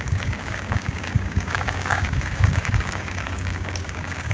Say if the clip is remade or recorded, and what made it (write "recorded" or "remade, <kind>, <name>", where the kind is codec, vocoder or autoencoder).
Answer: remade, codec, DAC